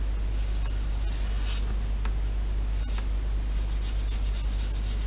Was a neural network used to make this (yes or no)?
no